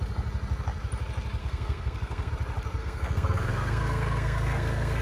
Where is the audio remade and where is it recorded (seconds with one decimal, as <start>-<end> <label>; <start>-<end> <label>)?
0.0-1.4 recorded; 1.4-2.3 remade; 2.3-2.8 recorded; 2.8-5.0 remade